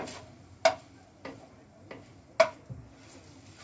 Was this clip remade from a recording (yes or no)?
no